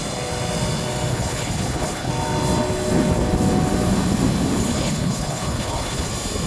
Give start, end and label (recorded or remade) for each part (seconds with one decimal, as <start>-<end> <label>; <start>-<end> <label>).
0.0-1.1 recorded; 1.1-2.1 remade; 2.1-4.6 recorded; 4.6-6.1 remade; 6.1-6.5 recorded